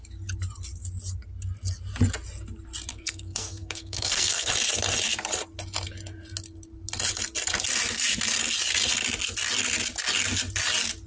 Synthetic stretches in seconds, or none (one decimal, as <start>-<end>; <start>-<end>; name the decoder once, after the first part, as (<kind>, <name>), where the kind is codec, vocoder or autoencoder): 2.9-4.5 (codec, SNAC)